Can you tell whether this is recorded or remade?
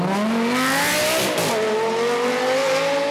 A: recorded